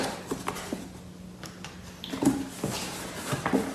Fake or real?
real